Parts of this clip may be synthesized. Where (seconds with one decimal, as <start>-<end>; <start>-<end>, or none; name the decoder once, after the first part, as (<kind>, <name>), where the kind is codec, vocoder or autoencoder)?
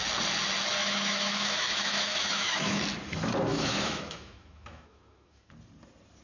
0.8-2.8 (autoencoder, DAC-VAE); 3.5-5.5